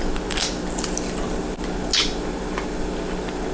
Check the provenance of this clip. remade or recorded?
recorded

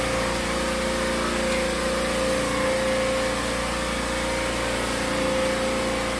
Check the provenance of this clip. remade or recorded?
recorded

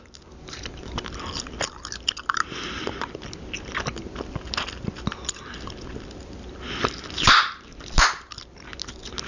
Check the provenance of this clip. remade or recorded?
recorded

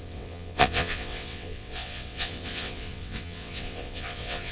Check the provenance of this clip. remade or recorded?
remade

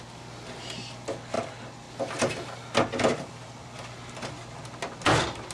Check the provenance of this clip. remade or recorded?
recorded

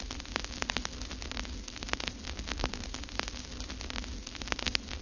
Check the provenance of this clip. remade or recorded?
recorded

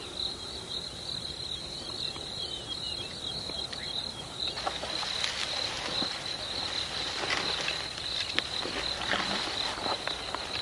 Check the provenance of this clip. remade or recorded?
recorded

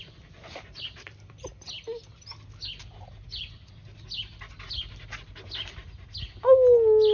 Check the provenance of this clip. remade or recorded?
recorded